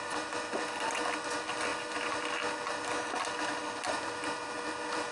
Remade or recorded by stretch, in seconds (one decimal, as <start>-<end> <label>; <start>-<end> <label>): 0.0-5.1 recorded

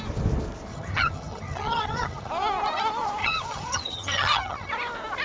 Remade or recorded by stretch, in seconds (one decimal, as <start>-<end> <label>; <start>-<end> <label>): 0.0-0.7 recorded; 0.7-2.3 remade; 2.3-3.2 recorded; 3.2-4.7 remade; 4.7-5.2 recorded